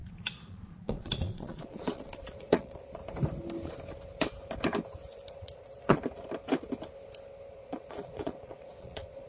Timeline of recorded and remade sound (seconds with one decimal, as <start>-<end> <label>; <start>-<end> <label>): 0.0-3.0 remade; 3.0-5.3 recorded; 5.3-6.0 remade; 6.0-7.5 recorded; 7.5-9.3 remade